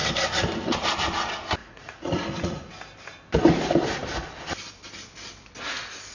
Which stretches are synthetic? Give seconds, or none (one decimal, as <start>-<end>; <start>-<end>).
1.6-2.7